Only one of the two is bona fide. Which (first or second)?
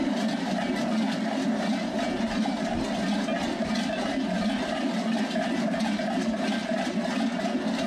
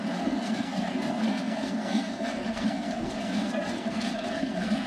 first